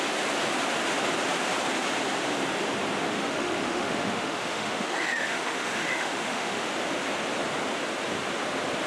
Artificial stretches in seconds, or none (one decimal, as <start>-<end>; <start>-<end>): 3.1-6.6